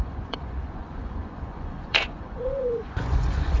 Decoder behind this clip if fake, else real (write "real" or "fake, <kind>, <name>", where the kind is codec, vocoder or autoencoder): fake, vocoder, Vocos